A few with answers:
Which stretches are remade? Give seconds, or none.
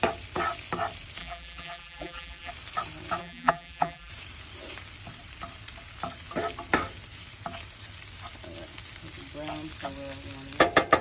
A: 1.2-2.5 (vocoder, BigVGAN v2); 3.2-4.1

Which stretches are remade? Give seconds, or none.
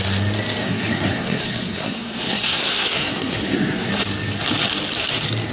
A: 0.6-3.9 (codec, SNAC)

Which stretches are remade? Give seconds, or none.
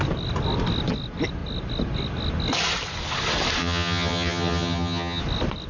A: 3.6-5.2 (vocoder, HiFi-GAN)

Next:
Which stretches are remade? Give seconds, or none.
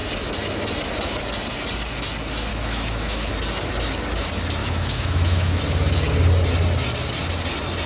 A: 2.5-3.3 (autoencoder, DAC-VAE); 4.6-5.6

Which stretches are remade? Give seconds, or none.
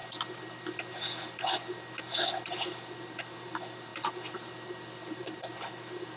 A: none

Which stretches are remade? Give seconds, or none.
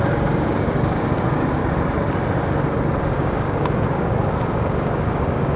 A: 0.0-1.6 (codec, DAC); 3.0-5.6